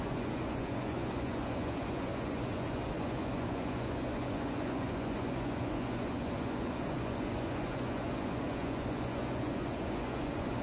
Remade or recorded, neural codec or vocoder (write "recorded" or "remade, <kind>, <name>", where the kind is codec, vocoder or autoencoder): remade, vocoder, Vocos